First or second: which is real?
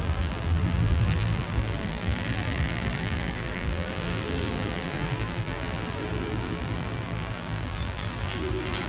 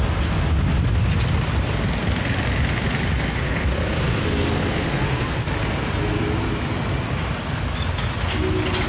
second